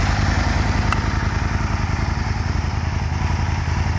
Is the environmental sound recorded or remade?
recorded